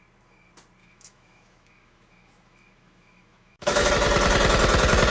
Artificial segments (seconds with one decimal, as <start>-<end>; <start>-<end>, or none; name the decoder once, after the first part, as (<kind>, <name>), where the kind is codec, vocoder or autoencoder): 0.8-3.9 (autoencoder, DAC-VAE)